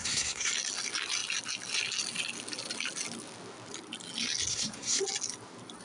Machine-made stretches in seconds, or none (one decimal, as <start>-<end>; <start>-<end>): 0.0-0.5; 4.5-5.0

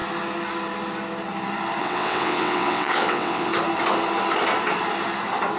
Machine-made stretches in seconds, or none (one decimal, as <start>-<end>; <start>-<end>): 1.8-3.5

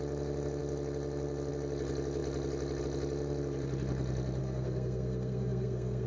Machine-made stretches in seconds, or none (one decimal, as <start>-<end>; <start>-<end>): 4.4-6.1

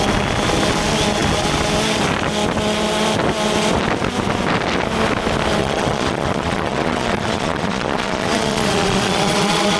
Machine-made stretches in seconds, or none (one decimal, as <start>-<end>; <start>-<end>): 5.6-9.8

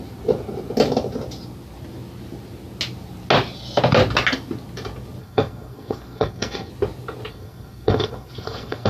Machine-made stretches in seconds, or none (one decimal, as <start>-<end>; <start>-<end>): 5.2-6.7; 7.3-8.9

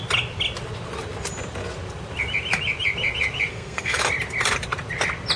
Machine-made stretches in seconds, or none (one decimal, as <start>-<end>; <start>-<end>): 3.5-4.0

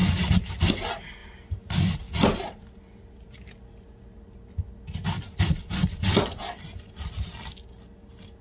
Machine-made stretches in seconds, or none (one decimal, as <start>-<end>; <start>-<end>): none